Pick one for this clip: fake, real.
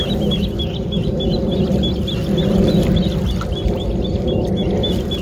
real